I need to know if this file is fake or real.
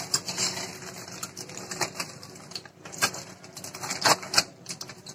fake